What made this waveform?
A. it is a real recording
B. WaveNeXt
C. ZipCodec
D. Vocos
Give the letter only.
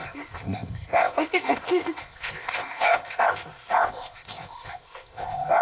C